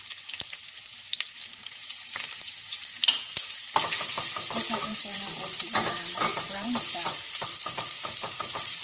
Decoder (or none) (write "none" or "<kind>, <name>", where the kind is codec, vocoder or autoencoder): vocoder, BigVGAN v2